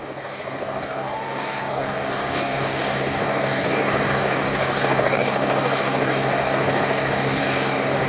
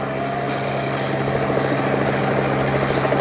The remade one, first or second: first